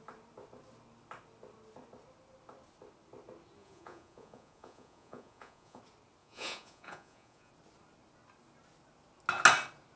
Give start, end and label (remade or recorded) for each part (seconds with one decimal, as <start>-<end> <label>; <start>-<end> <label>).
0.0-3.6 recorded; 3.6-5.8 remade; 5.8-6.2 recorded; 6.2-7.5 remade; 7.5-10.0 recorded